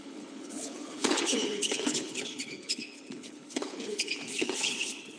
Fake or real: fake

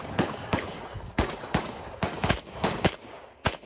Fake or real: fake